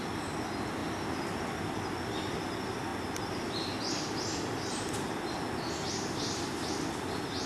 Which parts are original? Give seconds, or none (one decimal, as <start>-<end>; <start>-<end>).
0.0-7.5